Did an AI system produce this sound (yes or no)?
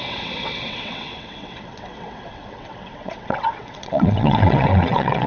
yes